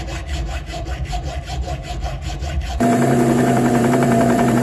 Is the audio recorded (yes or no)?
no